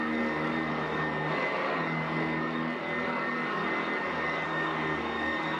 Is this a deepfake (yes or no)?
yes